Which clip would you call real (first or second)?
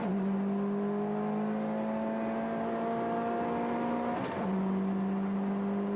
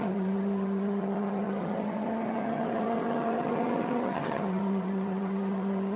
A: first